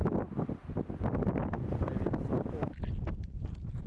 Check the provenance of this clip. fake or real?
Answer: real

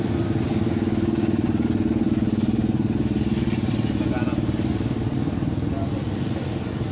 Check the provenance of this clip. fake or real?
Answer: real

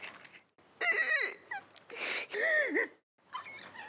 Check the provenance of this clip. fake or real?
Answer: real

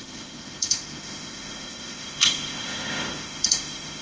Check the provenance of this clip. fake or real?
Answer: fake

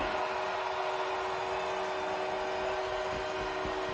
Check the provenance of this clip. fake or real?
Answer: real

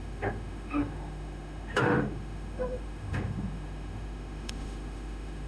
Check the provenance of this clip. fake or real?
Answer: fake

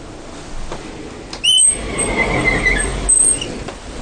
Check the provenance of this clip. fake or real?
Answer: real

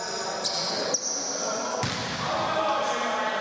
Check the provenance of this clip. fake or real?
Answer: real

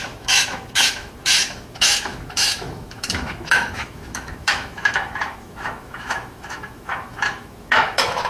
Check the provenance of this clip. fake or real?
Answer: fake